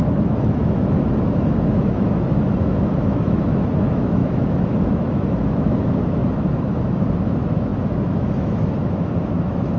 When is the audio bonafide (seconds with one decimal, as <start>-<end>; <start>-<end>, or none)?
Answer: none